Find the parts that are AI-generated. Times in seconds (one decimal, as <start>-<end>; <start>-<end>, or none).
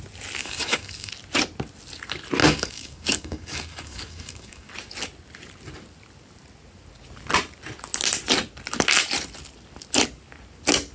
0.4-1.1; 2.4-4.7